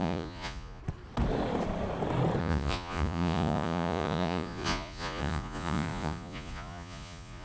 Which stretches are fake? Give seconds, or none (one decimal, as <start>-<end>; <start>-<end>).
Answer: 0.0-0.8; 2.4-7.4